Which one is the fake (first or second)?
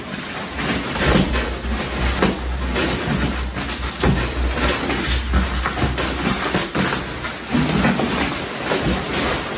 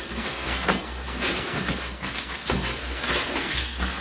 second